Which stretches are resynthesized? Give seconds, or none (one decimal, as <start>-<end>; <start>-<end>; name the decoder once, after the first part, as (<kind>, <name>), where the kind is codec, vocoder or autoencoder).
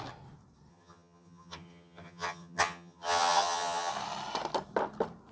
0.7-3.9 (vocoder, HiFi-GAN)